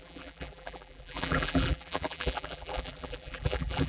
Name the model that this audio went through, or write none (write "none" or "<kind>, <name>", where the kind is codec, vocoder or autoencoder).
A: vocoder, BigVGAN v2